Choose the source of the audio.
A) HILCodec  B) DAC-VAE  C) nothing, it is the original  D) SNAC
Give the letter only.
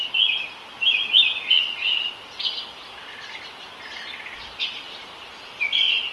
C